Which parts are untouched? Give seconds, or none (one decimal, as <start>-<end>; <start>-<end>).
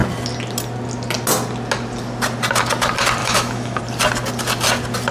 0.0-3.2; 3.8-5.1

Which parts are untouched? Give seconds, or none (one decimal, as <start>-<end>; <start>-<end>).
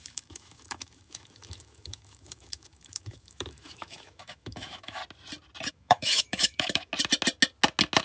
5.0-5.7; 6.9-8.0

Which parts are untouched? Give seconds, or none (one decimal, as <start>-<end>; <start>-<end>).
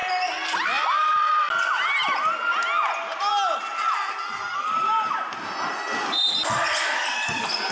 0.0-7.7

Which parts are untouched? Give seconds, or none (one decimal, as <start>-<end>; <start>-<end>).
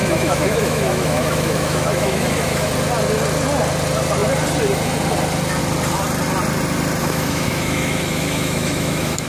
2.7-7.0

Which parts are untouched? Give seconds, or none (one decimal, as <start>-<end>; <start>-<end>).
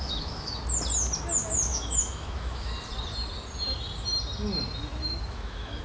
0.6-1.7; 2.7-5.0